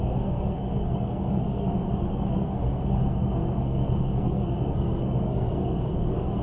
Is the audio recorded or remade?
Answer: remade